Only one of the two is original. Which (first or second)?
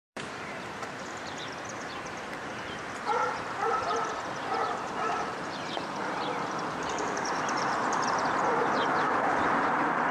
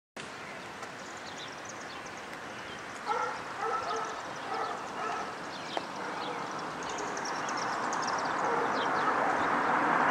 second